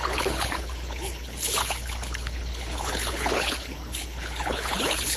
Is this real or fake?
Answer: fake